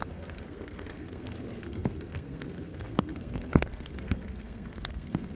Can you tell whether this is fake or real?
fake